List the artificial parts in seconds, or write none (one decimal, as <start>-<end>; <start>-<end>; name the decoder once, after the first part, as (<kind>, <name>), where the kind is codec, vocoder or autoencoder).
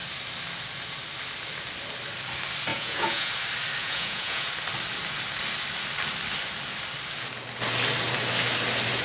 2.7-3.3 (vocoder, Vocos); 3.8-4.5